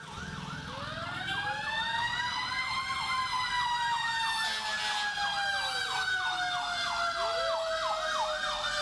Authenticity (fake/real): real